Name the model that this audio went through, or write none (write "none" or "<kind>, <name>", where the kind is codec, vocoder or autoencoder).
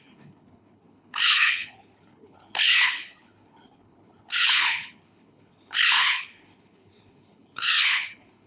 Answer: codec, HILCodec